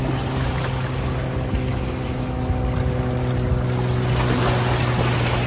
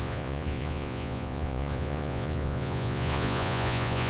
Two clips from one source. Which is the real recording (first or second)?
first